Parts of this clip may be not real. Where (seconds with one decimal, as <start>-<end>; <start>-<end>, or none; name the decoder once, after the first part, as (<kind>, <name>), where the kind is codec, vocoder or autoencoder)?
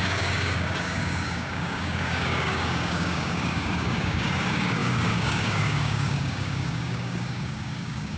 0.0-8.2 (codec, DAC)